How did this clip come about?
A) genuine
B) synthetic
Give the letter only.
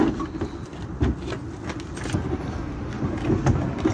A